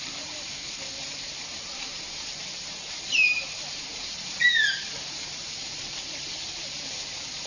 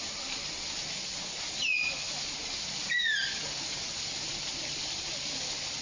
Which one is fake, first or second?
first